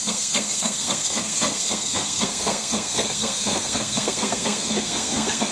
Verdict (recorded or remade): remade